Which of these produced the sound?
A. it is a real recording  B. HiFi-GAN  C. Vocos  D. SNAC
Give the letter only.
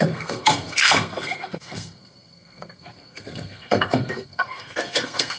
D